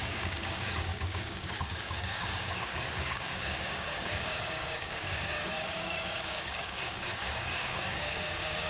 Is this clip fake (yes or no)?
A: yes